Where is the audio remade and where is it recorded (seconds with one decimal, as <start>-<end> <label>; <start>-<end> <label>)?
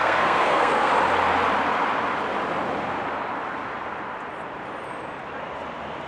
0.0-0.9 remade; 0.9-6.1 recorded